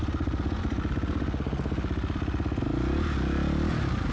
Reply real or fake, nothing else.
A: real